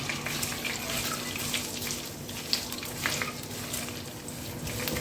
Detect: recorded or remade recorded